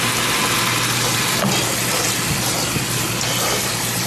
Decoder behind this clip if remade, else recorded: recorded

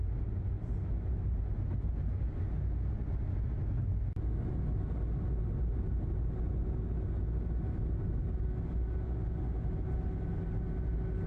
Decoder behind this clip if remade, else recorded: recorded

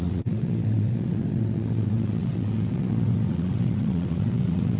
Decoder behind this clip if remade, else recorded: remade, vocoder, WaveNeXt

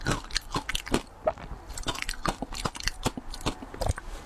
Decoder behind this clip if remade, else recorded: recorded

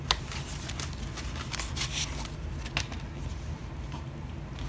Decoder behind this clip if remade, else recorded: recorded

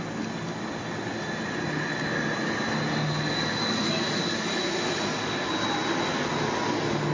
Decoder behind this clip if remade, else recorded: recorded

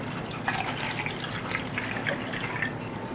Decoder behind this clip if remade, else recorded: recorded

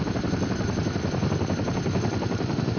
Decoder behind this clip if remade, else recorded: recorded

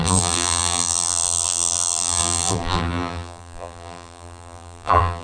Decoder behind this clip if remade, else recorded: remade, vocoder, BigVGAN v2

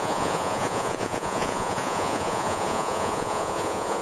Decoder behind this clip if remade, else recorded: remade, vocoder, Vocos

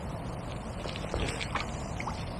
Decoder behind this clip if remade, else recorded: remade, vocoder, BigVGAN v2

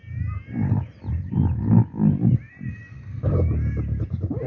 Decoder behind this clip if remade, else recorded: recorded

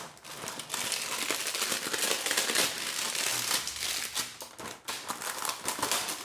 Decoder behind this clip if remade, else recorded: recorded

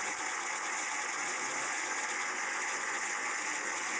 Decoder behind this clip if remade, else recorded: remade, vocoder, Vocos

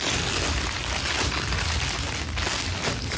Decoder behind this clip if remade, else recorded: recorded